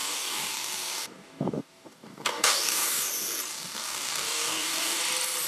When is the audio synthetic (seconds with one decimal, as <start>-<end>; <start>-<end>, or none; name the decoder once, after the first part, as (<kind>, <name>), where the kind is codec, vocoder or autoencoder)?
0.0-3.1 (codec, DAC); 3.5-5.0